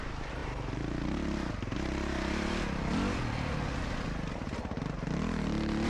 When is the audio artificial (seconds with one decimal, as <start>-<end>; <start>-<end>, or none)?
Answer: none